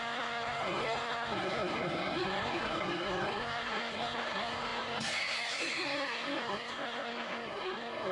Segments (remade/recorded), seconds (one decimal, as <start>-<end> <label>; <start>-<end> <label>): 0.0-8.1 remade